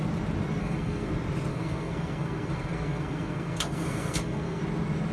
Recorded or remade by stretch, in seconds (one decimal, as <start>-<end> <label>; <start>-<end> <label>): 0.0-0.6 recorded; 0.6-1.1 remade; 1.1-1.5 recorded; 1.5-4.6 remade; 4.6-5.1 recorded